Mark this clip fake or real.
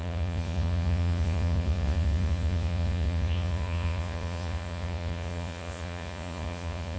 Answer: fake